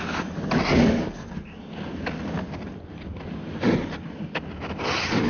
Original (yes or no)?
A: yes